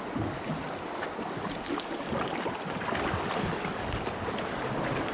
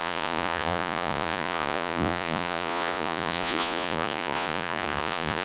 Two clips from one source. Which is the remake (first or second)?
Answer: second